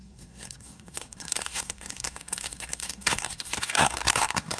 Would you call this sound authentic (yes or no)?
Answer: no